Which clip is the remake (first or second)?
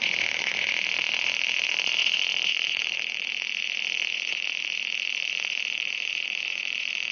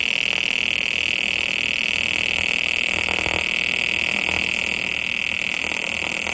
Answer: first